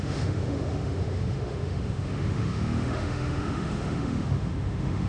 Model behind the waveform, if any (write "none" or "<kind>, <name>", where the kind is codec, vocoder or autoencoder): autoencoder, DAC-VAE